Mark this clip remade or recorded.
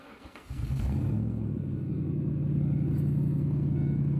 remade